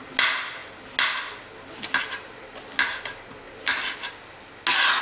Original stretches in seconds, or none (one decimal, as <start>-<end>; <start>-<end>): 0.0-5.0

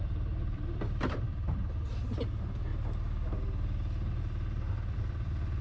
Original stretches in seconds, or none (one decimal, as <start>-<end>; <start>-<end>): 2.7-4.2

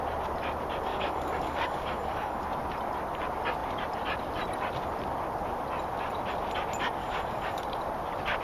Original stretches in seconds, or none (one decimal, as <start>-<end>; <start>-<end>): 0.0-0.9; 2.4-7.0; 7.6-8.4